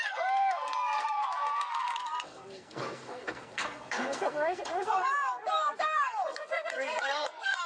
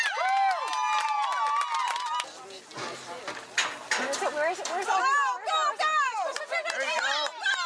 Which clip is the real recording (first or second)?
second